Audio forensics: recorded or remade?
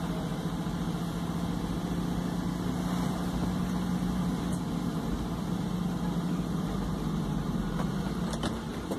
recorded